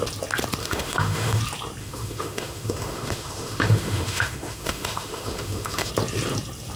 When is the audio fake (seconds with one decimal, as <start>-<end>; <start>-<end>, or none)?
0.6-1.4; 1.8-5.9